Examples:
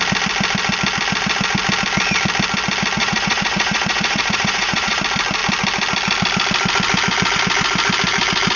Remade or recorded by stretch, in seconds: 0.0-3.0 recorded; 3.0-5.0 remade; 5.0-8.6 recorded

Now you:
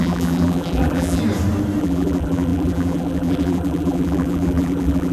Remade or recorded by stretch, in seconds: 0.0-1.2 remade; 1.2-1.8 recorded; 1.8-5.1 remade